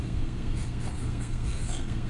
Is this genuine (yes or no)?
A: no